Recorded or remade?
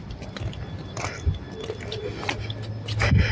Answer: recorded